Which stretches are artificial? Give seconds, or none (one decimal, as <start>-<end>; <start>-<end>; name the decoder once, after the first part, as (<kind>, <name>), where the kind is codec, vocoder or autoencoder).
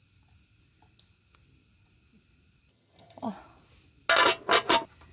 2.7-3.3 (vocoder, HiFi-GAN)